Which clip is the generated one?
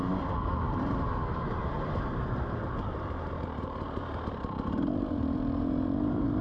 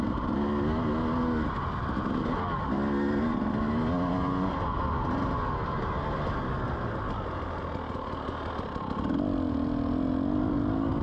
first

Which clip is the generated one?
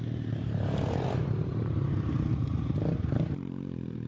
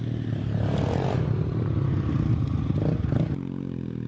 first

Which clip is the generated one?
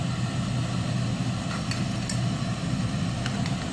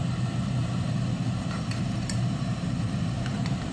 second